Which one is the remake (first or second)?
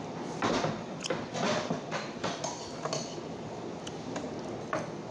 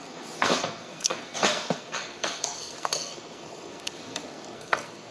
second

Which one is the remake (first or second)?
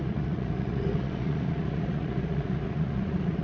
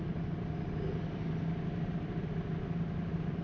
first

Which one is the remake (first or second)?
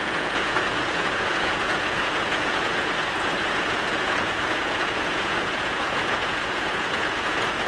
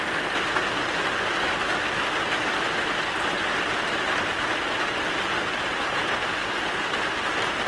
first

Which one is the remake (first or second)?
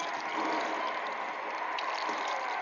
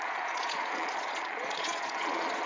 second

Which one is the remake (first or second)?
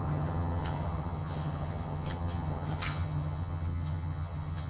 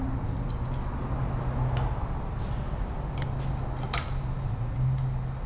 first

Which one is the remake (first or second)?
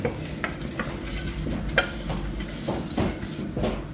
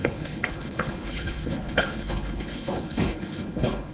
second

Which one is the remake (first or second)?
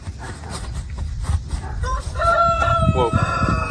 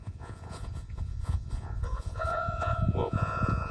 second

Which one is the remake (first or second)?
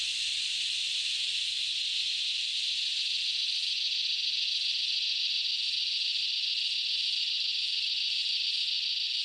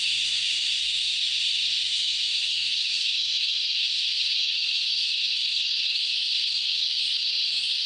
second